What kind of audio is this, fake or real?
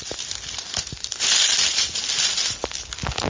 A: real